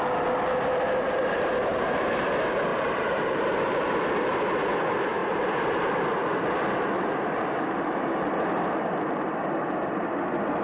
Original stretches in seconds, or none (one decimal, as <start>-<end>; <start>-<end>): 0.0-1.7; 2.3-2.7; 4.0-10.6

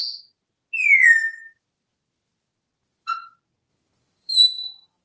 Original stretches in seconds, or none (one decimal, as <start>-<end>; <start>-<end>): 0.0-3.7; 4.3-5.0

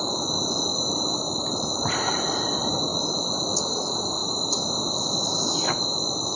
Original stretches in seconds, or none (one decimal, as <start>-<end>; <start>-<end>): 4.2-4.8

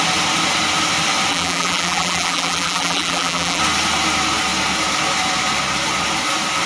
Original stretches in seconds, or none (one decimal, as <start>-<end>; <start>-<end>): 0.0-1.3; 3.6-6.7

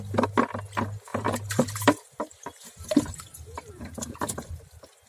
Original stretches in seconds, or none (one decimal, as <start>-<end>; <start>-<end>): 0.0-1.1; 3.7-5.1

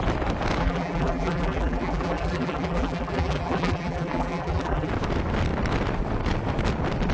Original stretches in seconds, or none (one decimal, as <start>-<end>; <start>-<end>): 0.0-0.6; 4.9-7.1

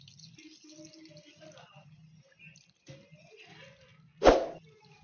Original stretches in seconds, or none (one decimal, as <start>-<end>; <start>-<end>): 0.0-5.0

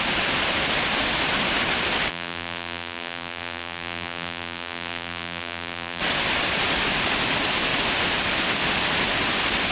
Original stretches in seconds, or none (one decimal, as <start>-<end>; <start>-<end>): 0.0-2.1; 6.0-9.7